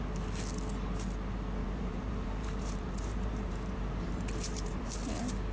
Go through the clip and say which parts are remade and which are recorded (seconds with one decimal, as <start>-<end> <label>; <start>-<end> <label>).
0.0-1.6 recorded; 1.6-4.9 remade; 4.9-5.5 recorded